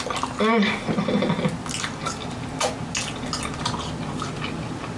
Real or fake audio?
real